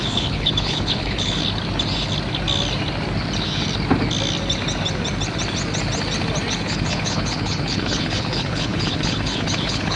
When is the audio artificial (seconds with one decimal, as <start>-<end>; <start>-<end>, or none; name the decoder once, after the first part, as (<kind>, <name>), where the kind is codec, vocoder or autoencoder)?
0.0-1.4 (codec, HILCodec); 6.5-10.0